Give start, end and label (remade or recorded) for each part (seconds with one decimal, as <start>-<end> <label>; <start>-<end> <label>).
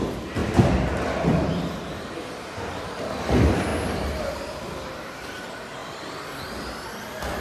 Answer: 0.0-7.4 recorded